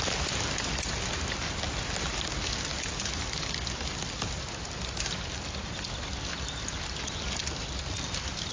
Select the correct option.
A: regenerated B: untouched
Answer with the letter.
B